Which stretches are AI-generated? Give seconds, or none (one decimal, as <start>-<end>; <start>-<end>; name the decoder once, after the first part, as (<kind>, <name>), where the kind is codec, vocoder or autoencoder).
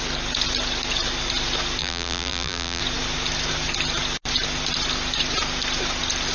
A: 1.8-2.8 (vocoder, BigVGAN v2)